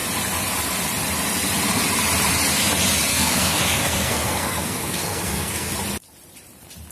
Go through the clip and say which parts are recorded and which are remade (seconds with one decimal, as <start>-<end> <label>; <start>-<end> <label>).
0.0-3.1 recorded; 3.1-5.7 remade; 5.7-6.9 recorded